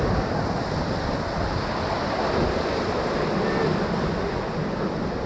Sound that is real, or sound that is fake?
real